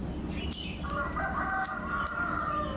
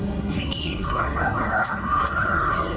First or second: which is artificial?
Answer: second